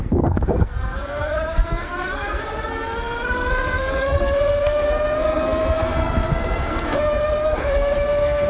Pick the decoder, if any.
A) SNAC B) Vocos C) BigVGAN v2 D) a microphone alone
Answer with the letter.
A